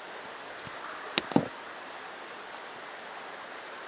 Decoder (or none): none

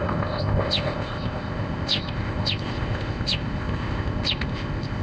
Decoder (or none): codec, ZipCodec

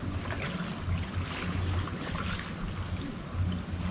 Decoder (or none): none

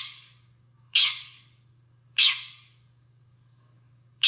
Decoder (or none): codec, DAC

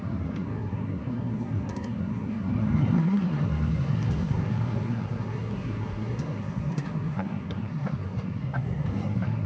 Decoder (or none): codec, SNAC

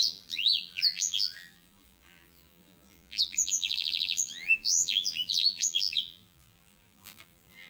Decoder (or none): vocoder, BigVGAN v2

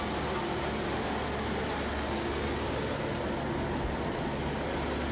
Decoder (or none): none